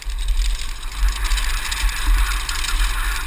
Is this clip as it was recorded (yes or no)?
yes